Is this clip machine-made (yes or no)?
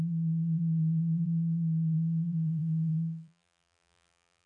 yes